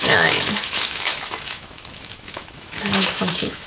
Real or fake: fake